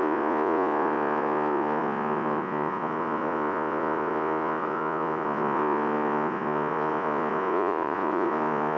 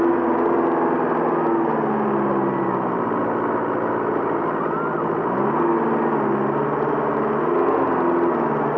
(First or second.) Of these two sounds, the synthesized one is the first